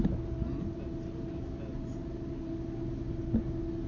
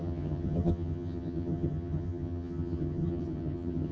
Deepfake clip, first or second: second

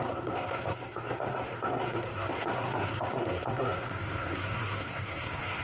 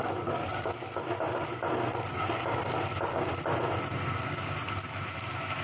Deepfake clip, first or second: first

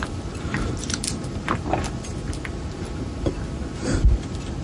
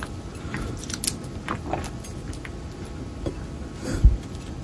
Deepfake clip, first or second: first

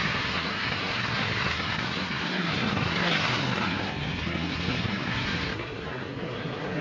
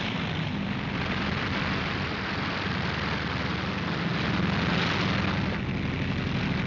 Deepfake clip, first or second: first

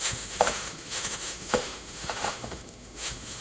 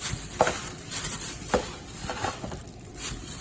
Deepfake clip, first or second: first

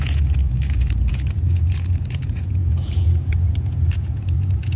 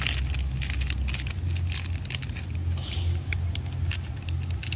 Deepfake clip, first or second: first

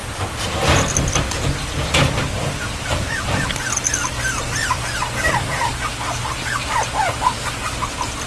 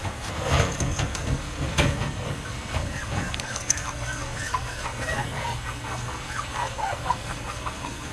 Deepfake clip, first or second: second